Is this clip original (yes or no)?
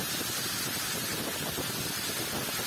yes